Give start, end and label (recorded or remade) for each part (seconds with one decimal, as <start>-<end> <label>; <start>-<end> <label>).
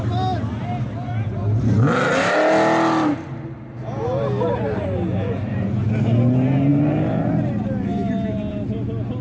0.0-9.2 recorded